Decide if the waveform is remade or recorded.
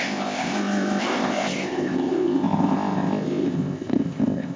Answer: remade